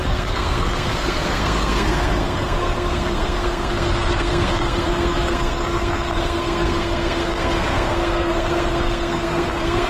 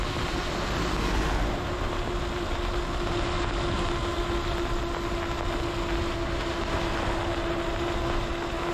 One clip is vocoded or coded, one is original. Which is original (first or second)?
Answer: second